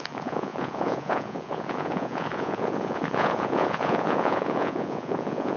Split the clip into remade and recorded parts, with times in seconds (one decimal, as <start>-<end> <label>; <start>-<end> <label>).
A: 0.0-5.6 remade